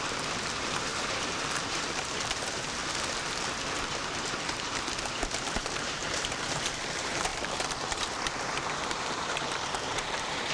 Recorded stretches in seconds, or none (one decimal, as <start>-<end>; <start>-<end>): 2.8-5.4